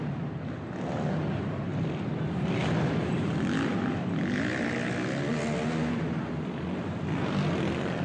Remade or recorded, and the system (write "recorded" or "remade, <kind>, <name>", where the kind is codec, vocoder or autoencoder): recorded